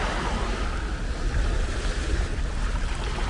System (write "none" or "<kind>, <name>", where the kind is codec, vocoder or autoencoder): none